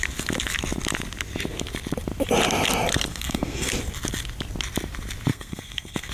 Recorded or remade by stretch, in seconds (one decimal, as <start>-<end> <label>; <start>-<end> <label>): 0.0-3.1 recorded; 3.1-3.7 remade; 3.7-5.3 recorded; 5.3-6.1 remade